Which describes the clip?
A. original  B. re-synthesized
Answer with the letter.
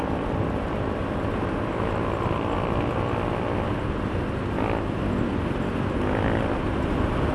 A